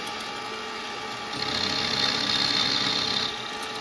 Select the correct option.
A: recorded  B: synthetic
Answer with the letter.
A